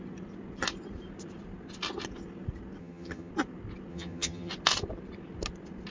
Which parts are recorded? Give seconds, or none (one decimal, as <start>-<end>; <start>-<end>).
0.0-2.8; 3.3-3.9; 4.5-5.9